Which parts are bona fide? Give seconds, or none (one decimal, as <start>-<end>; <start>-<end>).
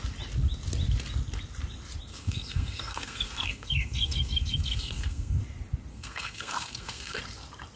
0.0-2.1; 5.4-5.9; 7.2-7.8